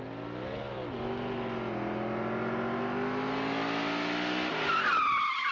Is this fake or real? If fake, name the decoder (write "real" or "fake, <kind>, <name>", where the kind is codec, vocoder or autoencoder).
real